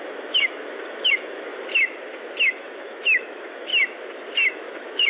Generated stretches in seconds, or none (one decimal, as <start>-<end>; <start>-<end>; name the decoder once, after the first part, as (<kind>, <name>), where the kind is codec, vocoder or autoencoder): 0.0-1.5 (autoencoder, DAC-VAE); 2.5-3.7; 4.5-5.1